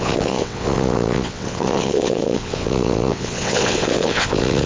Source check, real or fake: fake